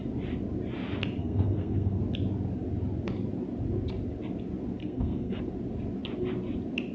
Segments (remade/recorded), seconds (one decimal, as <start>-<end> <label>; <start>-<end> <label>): 0.0-1.2 recorded; 1.2-2.0 remade; 2.0-4.8 recorded; 4.8-5.4 remade; 5.4-6.9 recorded